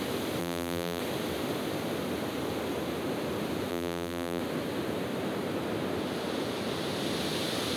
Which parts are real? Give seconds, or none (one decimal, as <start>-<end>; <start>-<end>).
0.0-0.4; 1.0-3.7; 4.4-7.8

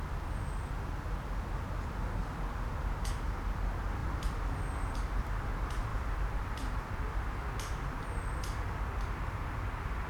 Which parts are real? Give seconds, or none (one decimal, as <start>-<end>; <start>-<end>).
0.0-4.0; 5.5-5.9; 7.3-10.1